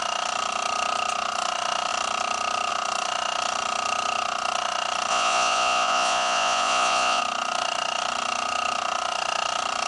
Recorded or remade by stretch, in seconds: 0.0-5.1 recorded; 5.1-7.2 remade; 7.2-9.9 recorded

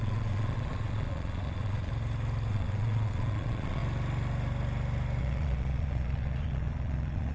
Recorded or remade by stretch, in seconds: 0.0-1.9 remade; 1.9-2.5 recorded; 2.5-3.8 remade; 3.8-5.2 recorded; 5.2-7.3 remade

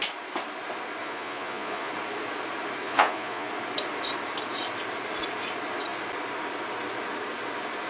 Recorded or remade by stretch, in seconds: 0.0-1.0 recorded; 1.0-1.9 remade; 1.9-2.8 recorded; 2.8-3.5 remade; 3.5-7.9 recorded

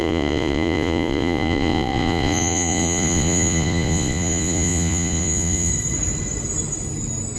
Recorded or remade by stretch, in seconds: 0.0-5.7 remade; 5.7-7.4 recorded

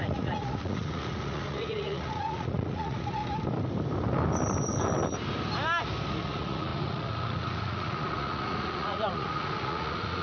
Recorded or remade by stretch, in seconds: 0.0-3.2 remade; 3.2-6.1 recorded; 6.1-10.2 remade

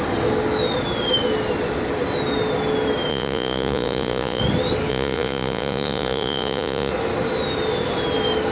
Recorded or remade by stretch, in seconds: 0.0-3.1 recorded; 3.1-4.4 remade; 4.4-4.9 recorded; 4.9-6.9 remade; 6.9-8.5 recorded